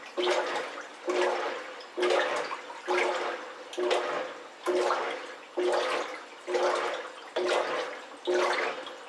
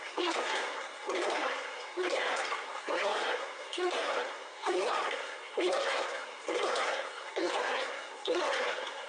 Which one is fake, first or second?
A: second